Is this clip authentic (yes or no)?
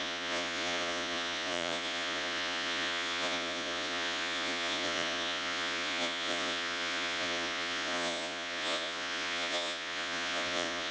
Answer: no